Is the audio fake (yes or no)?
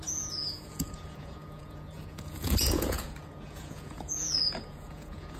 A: yes